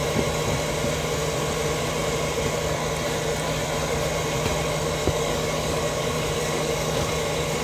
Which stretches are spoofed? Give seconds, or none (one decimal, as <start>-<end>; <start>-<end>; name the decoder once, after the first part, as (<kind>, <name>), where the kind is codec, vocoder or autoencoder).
5.0-7.1 (codec, DAC)